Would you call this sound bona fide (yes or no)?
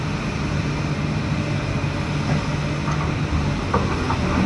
yes